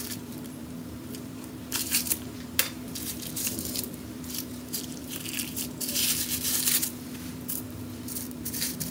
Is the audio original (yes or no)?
no